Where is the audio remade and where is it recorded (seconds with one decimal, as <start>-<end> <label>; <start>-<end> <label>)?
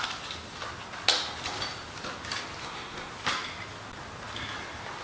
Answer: 0.0-2.6 recorded; 2.6-3.1 remade; 3.1-5.0 recorded